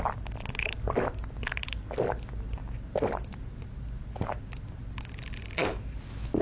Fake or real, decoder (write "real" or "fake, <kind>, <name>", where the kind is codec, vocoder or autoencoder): real